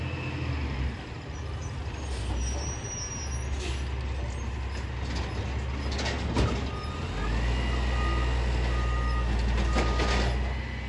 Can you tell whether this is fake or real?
real